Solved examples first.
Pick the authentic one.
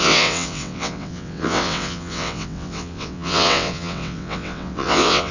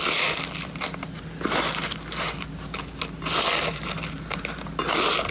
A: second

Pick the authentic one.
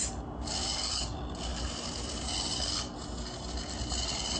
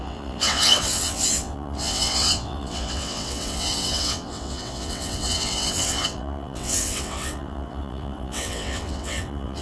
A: first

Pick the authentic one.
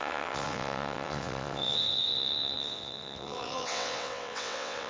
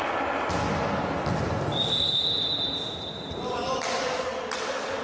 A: second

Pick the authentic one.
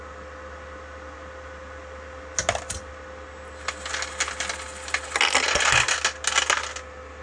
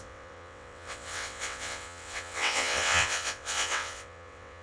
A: first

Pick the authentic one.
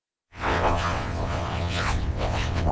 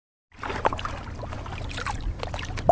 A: second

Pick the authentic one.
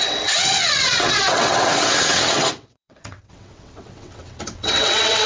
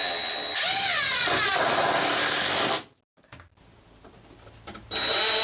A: second